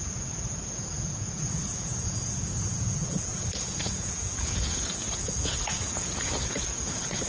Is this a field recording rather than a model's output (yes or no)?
no